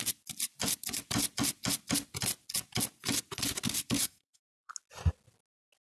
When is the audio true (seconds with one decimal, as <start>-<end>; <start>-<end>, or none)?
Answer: 0.0-4.0; 4.7-5.8